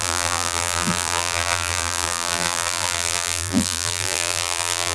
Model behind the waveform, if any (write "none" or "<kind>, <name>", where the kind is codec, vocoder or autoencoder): vocoder, BigVGAN v2